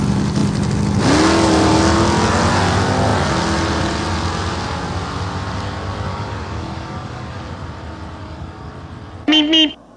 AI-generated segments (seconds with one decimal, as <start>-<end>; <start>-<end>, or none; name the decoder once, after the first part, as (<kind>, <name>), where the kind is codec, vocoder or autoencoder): 6.1-7.4 (codec, DAC); 8.2-8.7